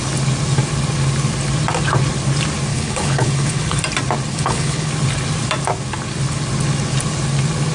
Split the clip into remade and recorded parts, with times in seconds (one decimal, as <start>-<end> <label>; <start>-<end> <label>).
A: 0.0-2.7 recorded; 2.7-3.8 remade; 3.8-4.3 recorded; 4.3-4.9 remade; 4.9-7.7 recorded

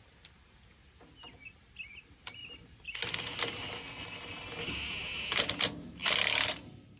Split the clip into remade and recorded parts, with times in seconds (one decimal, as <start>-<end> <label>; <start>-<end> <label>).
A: 0.0-7.0 recorded

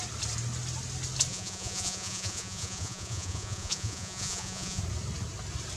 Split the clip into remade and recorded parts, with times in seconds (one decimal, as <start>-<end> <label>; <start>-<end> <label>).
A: 0.0-1.3 recorded; 1.3-4.8 remade; 4.8-5.8 recorded

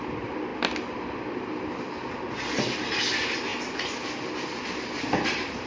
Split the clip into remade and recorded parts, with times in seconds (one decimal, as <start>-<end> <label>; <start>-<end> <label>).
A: 0.0-5.7 recorded